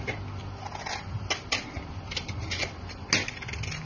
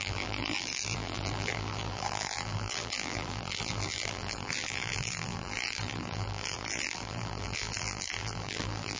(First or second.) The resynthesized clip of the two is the second